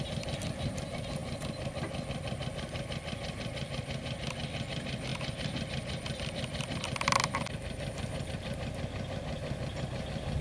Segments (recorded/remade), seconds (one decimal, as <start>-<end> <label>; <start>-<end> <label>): 0.0-10.4 recorded